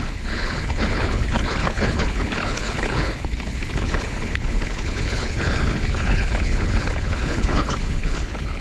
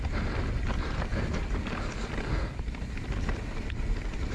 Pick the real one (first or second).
second